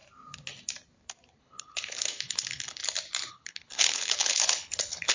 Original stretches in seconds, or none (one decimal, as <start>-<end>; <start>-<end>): 0.0-1.4; 2.8-3.3